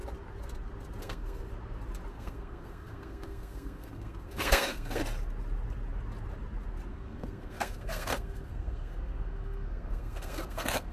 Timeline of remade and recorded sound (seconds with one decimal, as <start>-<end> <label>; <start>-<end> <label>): 0.0-1.0 recorded; 1.0-1.5 remade; 1.5-2.1 recorded; 2.1-5.0 remade; 5.0-6.9 recorded; 6.9-10.9 remade